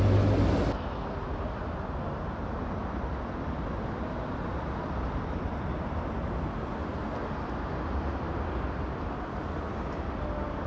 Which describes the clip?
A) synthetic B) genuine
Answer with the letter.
B